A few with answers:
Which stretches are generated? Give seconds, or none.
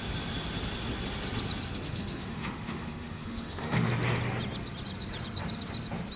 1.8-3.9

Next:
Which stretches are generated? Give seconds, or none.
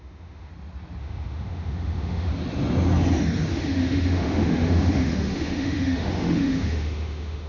0.0-0.5; 1.0-2.3; 3.5-7.5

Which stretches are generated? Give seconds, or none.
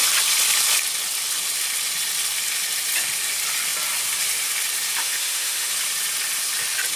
5.0-5.7